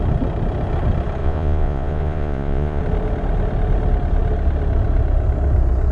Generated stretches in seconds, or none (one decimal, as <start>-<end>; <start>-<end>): 1.2-2.8

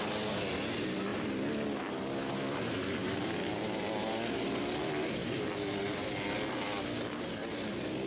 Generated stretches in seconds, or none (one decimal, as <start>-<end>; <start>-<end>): none

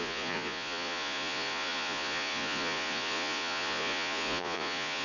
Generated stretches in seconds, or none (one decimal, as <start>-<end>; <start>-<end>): 0.0-5.0